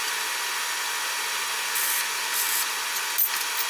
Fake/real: real